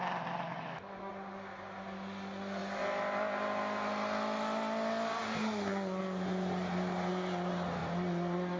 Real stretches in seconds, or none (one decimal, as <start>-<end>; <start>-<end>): 0.0-0.5; 1.1-8.6